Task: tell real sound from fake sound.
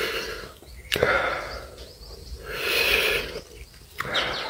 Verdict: real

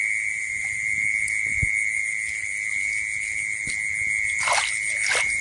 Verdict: real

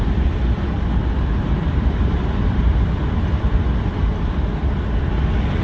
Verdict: fake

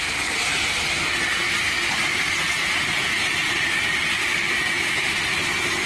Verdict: real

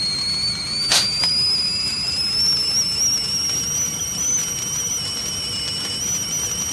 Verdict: real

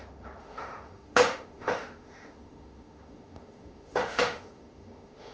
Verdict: fake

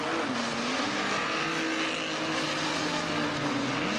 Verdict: real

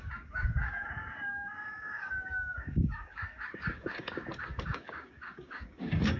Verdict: fake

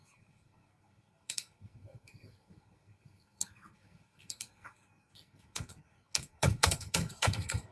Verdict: fake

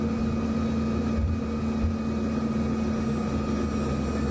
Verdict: real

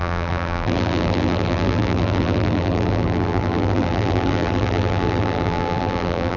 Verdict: fake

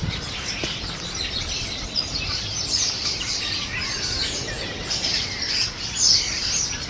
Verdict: real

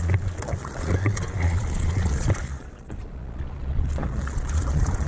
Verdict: fake